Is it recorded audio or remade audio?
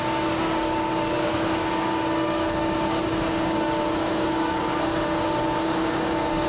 remade